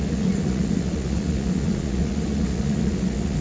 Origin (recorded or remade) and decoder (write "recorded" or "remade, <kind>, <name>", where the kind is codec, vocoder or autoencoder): remade, vocoder, Vocos